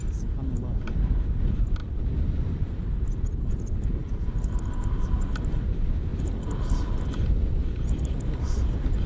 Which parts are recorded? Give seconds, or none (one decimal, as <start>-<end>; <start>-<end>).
0.0-1.8; 2.9-6.1; 7.0-9.1